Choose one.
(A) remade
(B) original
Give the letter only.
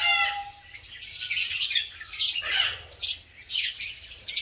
B